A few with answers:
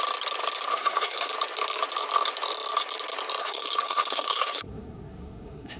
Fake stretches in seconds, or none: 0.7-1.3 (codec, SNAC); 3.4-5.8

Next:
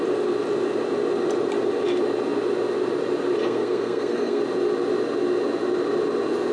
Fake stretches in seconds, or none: 3.4-4.4 (codec, SNAC)

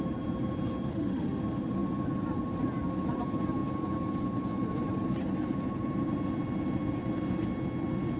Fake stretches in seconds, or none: 0.9-1.4 (autoencoder, DAC-VAE)